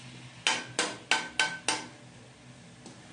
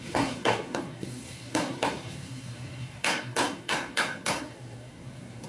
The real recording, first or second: first